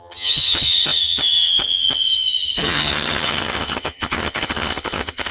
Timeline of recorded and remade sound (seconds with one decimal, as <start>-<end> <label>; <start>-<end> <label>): 0.0-5.3 remade